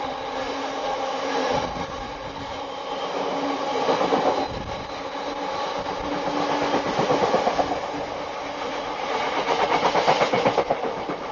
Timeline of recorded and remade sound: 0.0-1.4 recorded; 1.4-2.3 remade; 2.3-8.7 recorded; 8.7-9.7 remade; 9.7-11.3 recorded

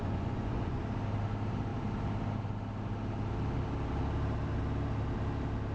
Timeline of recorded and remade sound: 0.0-0.8 remade; 0.8-5.7 recorded

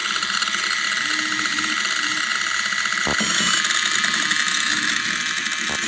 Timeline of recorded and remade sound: 0.0-5.9 recorded

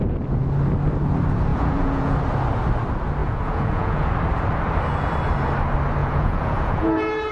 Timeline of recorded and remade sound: 0.0-1.5 recorded; 1.5-2.2 remade; 2.2-3.2 recorded; 3.2-4.1 remade; 4.1-6.0 recorded; 6.0-7.3 remade

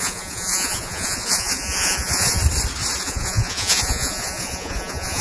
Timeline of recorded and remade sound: 0.0-2.4 remade; 2.4-3.0 recorded; 3.0-5.2 remade

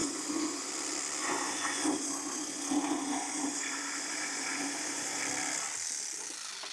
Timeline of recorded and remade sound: 0.0-0.7 remade; 0.7-1.2 recorded; 1.2-5.2 remade; 5.2-6.7 recorded

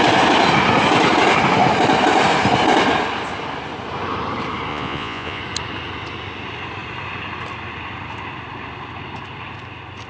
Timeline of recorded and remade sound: 0.0-4.7 recorded; 4.7-5.4 remade; 5.4-10.1 recorded

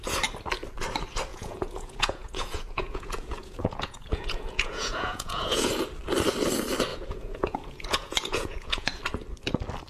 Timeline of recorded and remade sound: 0.0-1.3 recorded; 1.3-5.7 remade; 5.7-6.9 recorded; 6.9-9.0 remade; 9.0-9.9 recorded